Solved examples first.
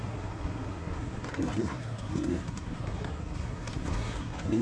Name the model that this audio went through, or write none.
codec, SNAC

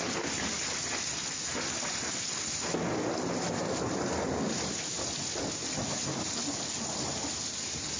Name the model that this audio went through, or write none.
none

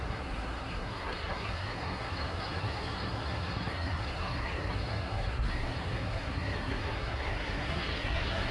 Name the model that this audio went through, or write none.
codec, SNAC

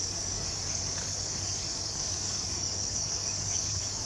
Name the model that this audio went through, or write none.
codec, DAC